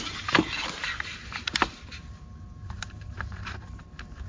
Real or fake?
fake